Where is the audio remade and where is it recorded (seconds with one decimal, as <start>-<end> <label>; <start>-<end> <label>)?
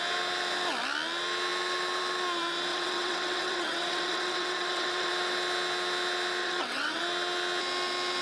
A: 0.0-2.7 recorded; 2.7-5.1 remade; 5.1-6.4 recorded; 6.4-7.0 remade; 7.0-8.2 recorded